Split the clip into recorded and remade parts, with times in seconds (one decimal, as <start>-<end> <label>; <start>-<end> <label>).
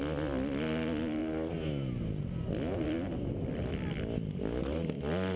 0.0-5.4 recorded